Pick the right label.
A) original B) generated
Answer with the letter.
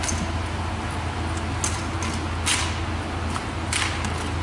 A